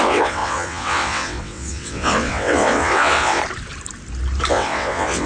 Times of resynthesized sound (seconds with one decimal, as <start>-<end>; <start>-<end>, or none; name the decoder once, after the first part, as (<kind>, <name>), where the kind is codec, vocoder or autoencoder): 0.0-3.4 (vocoder, WaveNeXt); 4.5-5.3